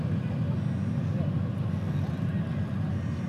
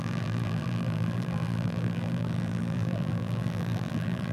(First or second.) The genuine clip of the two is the first